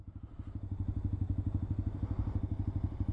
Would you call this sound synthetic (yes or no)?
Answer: no